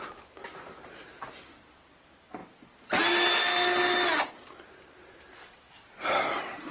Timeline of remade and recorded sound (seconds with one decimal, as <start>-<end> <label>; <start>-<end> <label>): 0.0-6.7 recorded